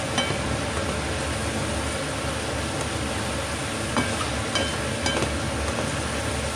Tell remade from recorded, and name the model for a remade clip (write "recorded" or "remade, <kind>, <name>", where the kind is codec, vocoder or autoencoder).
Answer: recorded